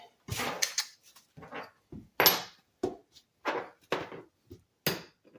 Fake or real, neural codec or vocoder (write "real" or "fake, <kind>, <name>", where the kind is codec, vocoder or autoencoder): real